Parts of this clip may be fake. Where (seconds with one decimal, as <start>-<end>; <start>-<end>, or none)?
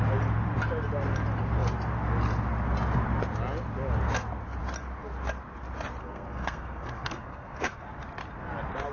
6.0-7.8